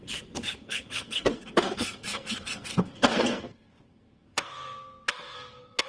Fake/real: fake